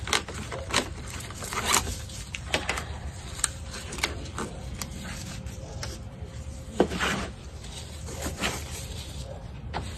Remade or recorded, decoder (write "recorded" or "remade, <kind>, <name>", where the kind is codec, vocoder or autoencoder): remade, vocoder, BigVGAN v2